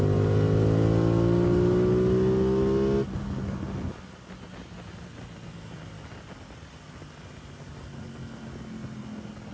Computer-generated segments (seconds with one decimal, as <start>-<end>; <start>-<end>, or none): none

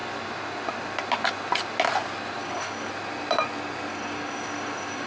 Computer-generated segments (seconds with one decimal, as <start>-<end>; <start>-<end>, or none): 2.4-2.9; 3.9-5.1

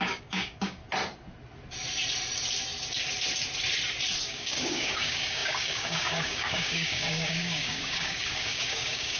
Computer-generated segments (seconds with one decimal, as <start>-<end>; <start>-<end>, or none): 0.0-0.8; 4.2-9.2

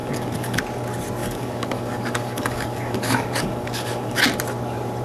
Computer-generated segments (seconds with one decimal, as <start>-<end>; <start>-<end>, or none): 0.0-0.6; 1.2-4.2

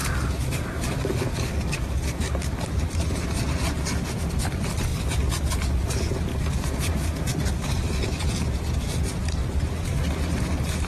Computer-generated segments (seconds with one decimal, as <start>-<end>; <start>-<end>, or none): 0.0-2.7; 6.3-7.3

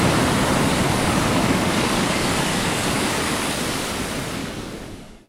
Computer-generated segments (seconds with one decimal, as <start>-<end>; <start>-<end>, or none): 0.7-3.9; 4.4-5.3